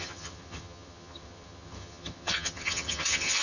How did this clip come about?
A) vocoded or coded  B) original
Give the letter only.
A